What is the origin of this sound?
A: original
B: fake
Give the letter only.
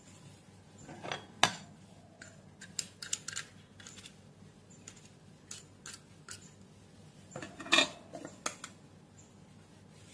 A